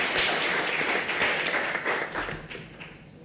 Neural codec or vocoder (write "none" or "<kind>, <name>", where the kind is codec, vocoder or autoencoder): none